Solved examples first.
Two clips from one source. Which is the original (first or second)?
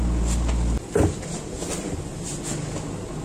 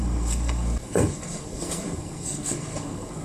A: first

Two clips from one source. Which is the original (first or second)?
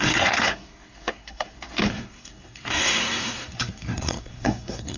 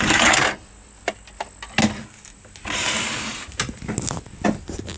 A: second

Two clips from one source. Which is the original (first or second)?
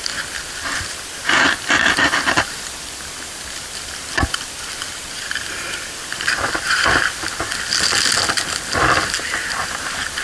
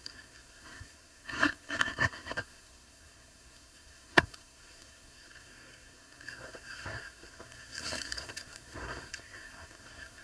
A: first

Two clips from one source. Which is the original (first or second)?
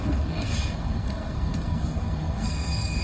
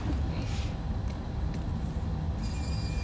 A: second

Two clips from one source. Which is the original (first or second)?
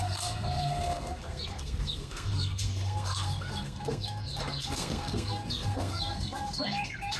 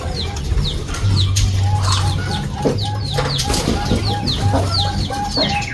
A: second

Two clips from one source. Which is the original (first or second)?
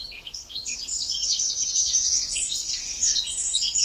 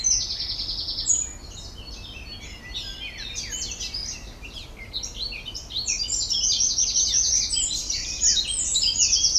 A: second